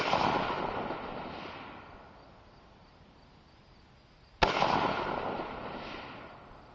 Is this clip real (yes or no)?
yes